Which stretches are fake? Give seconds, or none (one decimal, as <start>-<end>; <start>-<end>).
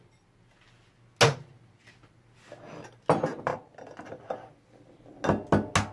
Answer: none